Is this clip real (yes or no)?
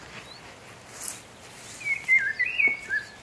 yes